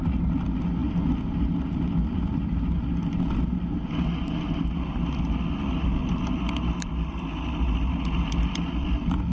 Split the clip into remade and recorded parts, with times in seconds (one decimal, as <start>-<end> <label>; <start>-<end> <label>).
0.0-9.3 recorded